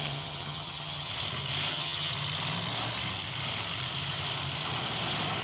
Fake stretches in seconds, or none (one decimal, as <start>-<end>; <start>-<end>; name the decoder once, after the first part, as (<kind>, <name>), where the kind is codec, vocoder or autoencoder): 0.0-1.1 (vocoder, HiFi-GAN); 1.7-2.1